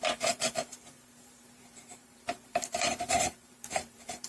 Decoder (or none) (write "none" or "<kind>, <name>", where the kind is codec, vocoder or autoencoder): vocoder, BigVGAN v2